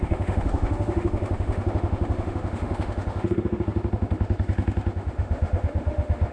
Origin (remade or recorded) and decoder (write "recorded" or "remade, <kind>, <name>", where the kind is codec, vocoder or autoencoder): remade, autoencoder, DAC-VAE